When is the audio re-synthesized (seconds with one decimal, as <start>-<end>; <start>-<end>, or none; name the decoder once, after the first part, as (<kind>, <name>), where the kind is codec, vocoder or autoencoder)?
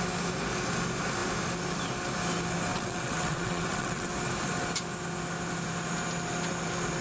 2.7-4.1 (vocoder, WaveNeXt)